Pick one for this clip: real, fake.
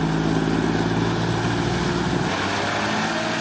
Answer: real